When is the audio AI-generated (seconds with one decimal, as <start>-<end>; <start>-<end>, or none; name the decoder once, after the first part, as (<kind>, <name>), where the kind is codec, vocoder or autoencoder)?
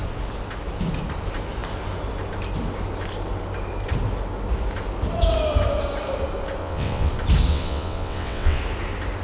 6.6-7.1 (vocoder, WaveNeXt); 7.5-8.6